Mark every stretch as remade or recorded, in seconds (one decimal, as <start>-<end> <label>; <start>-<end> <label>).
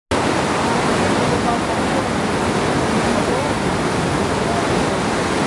0.0-5.5 recorded